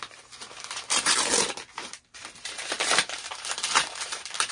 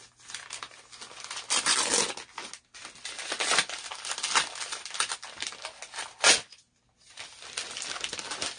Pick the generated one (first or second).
first